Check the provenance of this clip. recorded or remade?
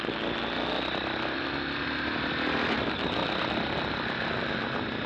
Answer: recorded